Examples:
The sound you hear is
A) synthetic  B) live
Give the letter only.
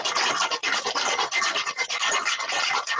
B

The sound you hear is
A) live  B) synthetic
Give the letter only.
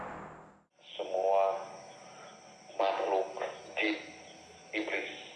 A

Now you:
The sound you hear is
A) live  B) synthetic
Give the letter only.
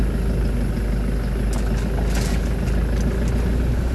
A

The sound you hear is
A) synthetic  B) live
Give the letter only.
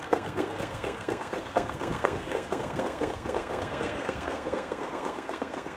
A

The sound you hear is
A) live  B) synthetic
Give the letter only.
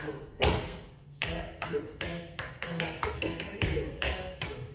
B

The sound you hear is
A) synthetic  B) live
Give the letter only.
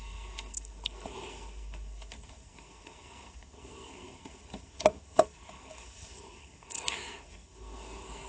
A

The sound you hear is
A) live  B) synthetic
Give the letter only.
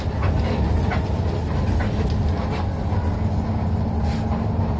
A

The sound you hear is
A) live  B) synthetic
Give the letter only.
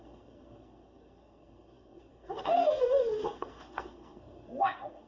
B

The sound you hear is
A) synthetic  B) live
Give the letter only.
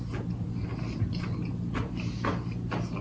B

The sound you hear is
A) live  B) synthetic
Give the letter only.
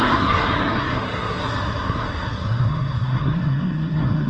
B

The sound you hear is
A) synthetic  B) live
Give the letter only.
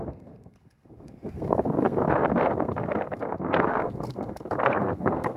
A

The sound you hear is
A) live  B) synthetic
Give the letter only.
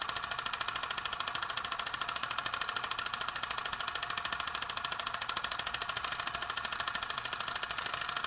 A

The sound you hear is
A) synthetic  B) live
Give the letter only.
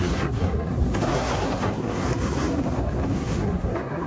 A